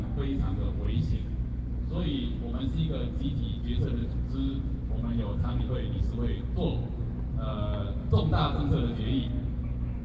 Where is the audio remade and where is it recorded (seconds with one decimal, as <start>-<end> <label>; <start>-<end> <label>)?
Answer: 0.0-1.1 recorded; 1.1-2.6 remade; 2.6-4.0 recorded; 4.0-5.7 remade; 5.7-10.0 recorded